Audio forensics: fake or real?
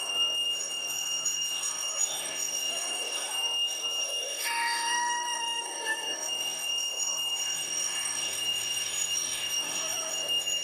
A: fake